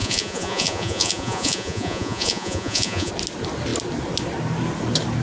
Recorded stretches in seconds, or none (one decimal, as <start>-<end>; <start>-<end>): 3.1-5.2